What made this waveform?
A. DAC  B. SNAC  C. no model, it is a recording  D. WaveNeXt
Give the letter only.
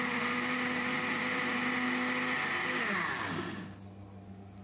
C